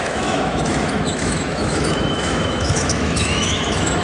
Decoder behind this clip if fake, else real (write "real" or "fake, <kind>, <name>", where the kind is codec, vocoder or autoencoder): fake, autoencoder, DAC-VAE